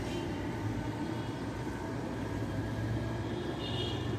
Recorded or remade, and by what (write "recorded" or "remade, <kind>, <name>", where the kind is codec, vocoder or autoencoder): recorded